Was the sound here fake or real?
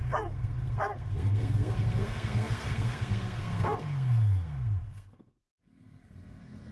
fake